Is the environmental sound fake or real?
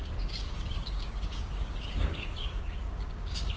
fake